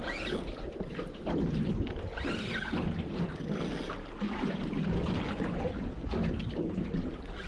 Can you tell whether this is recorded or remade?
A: recorded